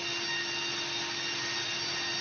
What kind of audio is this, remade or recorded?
recorded